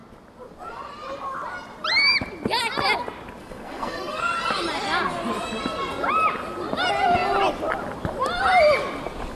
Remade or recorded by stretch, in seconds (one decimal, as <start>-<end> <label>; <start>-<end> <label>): 0.0-3.4 recorded; 3.4-4.2 remade; 4.2-9.3 recorded